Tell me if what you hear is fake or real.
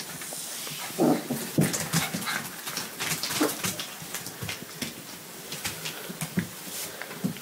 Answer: real